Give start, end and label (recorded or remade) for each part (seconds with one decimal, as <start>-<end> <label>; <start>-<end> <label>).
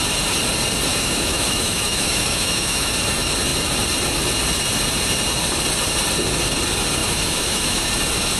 0.0-0.9 recorded; 0.9-2.9 remade; 2.9-7.0 recorded; 7.0-7.9 remade; 7.9-8.4 recorded